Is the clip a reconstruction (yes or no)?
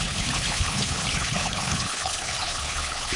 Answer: yes